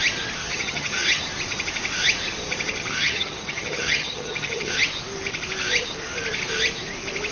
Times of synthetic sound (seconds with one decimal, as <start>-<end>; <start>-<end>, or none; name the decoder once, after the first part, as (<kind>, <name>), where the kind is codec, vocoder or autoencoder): 0.4-1.2 (vocoder, HiFi-GAN); 2.8-4.7